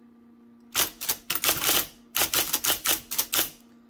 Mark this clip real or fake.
real